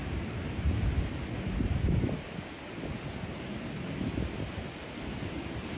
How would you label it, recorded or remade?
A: recorded